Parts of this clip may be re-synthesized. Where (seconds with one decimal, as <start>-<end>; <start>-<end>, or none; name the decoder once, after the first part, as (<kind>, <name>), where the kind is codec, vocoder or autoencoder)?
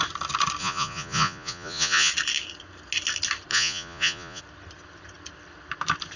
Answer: 0.6-2.1 (vocoder, Vocos); 3.5-4.4